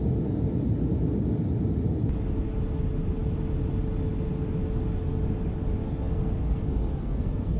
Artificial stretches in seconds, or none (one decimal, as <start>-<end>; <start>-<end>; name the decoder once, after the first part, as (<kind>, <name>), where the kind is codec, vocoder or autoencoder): 5.8-7.6 (codec, SNAC)